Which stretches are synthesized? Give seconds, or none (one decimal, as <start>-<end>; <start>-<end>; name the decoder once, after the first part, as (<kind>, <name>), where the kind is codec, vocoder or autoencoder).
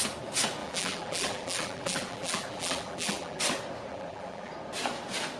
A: 0.6-3.4 (vocoder, BigVGAN v2); 3.9-4.5